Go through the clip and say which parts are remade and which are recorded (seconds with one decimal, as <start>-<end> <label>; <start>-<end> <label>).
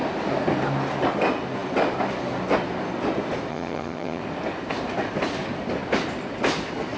0.0-3.5 recorded; 3.5-4.2 remade; 4.2-7.0 recorded